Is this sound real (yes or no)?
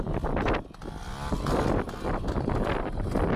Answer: yes